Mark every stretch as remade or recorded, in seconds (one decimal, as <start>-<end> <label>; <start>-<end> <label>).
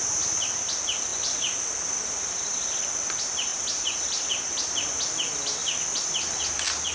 0.0-3.5 recorded; 3.5-4.9 remade; 4.9-5.6 recorded; 5.6-6.5 remade; 6.5-6.9 recorded